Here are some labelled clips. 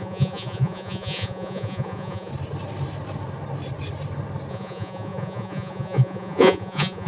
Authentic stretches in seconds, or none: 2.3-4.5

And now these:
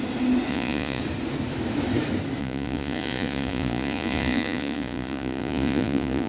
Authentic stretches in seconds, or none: 0.0-0.5; 1.0-2.4

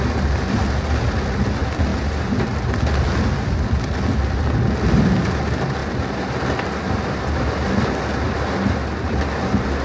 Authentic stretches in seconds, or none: 0.0-9.8

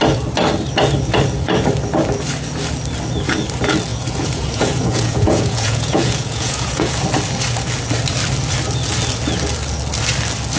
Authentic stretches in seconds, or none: 0.0-3.9; 6.9-10.6